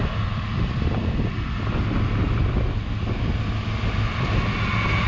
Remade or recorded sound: recorded